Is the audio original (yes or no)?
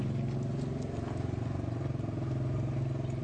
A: yes